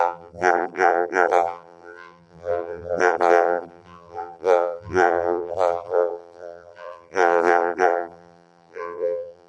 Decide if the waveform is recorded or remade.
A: remade